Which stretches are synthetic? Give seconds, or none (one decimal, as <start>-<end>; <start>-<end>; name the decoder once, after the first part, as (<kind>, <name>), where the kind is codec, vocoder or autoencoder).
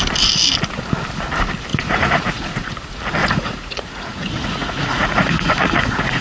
1.7-2.7 (vocoder, Vocos); 3.2-6.2